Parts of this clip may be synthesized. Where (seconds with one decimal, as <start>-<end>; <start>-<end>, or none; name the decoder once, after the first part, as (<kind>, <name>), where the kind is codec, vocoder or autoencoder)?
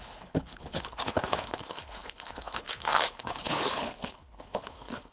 0.0-5.1 (codec, HILCodec)